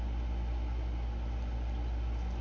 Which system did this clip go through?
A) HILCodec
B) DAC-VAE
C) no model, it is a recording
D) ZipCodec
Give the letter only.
C